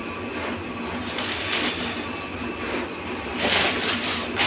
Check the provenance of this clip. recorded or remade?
recorded